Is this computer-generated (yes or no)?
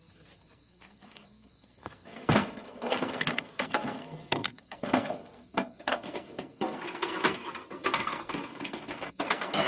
yes